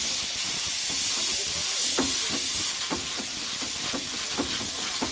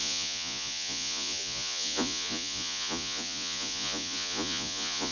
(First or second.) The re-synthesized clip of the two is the second